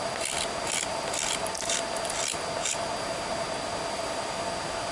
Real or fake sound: real